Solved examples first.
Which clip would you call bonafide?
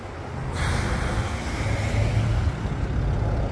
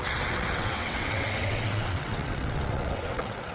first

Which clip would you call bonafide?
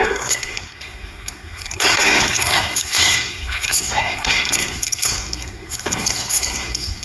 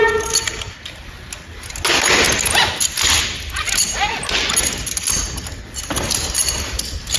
second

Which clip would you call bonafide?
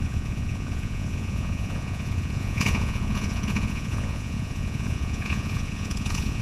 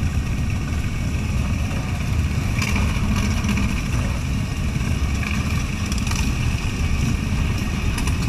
second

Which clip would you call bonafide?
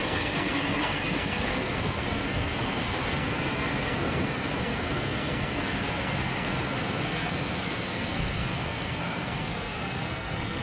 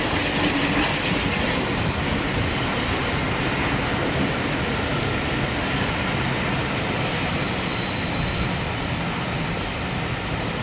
second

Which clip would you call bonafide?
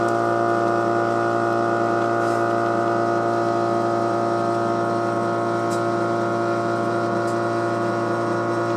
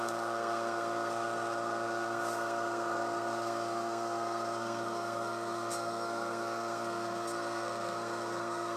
first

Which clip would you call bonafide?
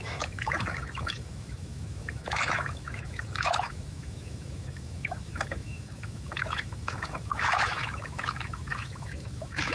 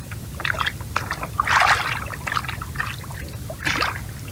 second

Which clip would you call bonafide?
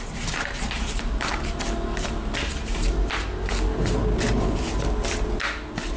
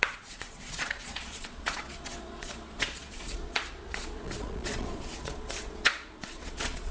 first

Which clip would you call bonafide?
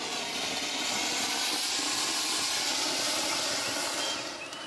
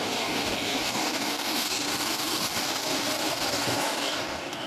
first